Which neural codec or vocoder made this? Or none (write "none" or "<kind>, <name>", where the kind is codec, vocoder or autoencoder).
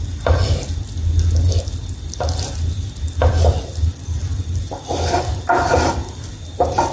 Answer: none